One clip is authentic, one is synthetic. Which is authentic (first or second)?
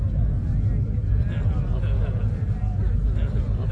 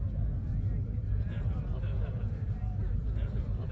first